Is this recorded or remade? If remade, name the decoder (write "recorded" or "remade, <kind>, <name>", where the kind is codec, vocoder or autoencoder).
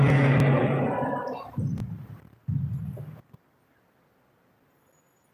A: recorded